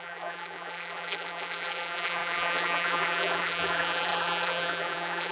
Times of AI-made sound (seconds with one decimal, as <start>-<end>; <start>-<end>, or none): 0.0-5.3